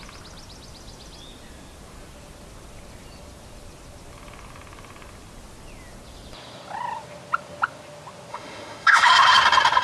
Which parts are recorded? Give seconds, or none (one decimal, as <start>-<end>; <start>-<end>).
0.0-8.3; 9.1-9.8